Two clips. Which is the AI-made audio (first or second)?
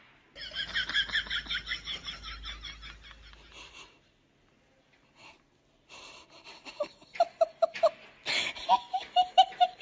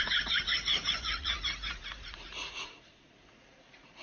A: second